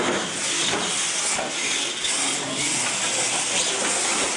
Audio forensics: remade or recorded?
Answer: recorded